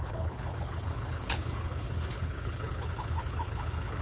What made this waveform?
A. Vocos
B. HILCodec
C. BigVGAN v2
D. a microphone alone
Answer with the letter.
B